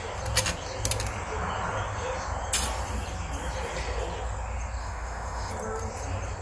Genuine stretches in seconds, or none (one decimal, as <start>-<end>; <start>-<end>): 0.0-4.8; 5.5-6.4